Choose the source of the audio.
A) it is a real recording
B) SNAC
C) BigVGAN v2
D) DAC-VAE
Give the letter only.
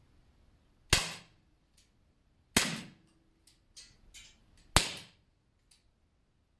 A